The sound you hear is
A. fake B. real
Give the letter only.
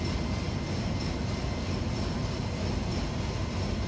B